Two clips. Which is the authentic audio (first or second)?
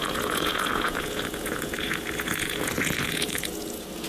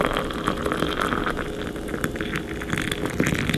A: second